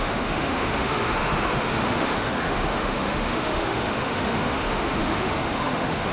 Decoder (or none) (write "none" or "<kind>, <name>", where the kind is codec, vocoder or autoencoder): autoencoder, DAC-VAE